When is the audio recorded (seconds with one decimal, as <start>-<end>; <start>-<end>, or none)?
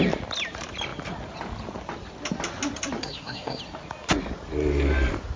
0.0-3.0; 3.6-5.4